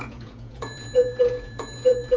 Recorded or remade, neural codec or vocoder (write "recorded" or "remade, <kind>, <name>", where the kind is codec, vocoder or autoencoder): remade, vocoder, Vocos